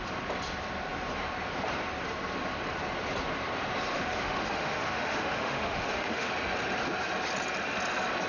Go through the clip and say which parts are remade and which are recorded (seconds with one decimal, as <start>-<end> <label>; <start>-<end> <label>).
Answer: 0.0-3.9 recorded; 3.9-6.3 remade; 6.3-8.3 recorded